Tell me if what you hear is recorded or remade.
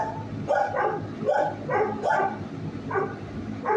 recorded